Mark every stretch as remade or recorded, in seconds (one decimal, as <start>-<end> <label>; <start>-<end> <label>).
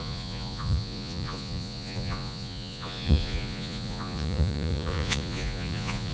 0.0-6.1 remade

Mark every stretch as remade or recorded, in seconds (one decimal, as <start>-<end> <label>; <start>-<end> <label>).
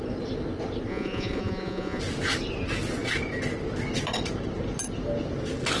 0.0-0.9 recorded; 0.9-2.0 remade; 2.0-5.8 recorded